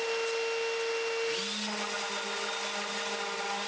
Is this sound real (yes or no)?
yes